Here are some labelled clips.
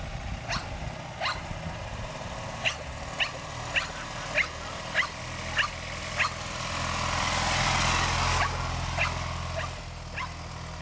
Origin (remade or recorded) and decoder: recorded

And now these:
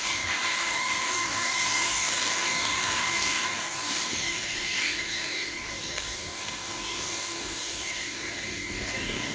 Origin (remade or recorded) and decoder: remade, codec, DAC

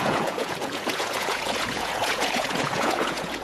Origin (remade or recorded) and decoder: remade, vocoder, Vocos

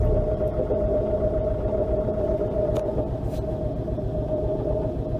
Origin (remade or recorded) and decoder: recorded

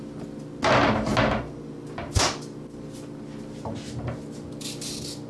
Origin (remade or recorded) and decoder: recorded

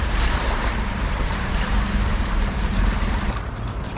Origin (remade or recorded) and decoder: remade, vocoder, BigVGAN v2